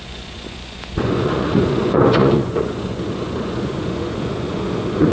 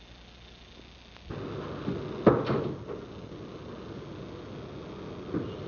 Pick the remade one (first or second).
first